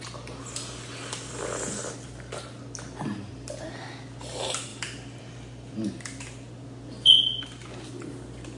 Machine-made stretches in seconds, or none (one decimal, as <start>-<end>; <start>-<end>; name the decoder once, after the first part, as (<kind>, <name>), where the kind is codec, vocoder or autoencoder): none